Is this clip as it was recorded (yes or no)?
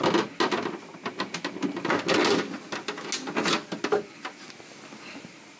yes